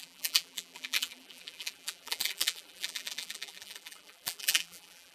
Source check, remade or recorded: remade